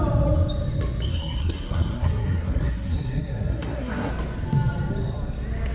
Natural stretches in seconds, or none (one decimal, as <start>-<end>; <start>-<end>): 0.0-1.1; 4.1-5.7